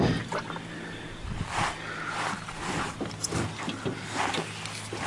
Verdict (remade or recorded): recorded